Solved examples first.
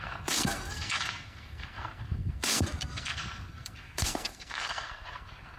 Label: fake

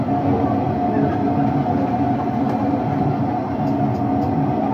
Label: real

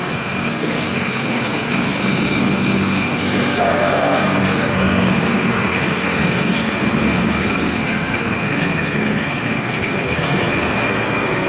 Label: fake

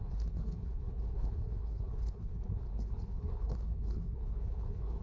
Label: fake